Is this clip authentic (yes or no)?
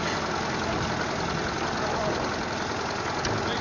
yes